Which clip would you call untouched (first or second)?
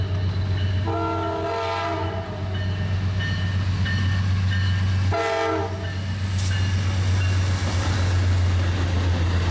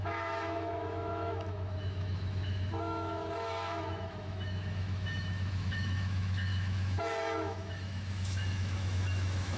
first